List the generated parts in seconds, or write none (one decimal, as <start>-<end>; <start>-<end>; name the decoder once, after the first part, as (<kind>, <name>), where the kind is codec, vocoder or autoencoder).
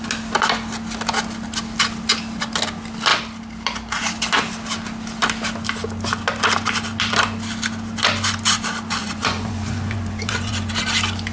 9.0-10.7 (vocoder, Vocos)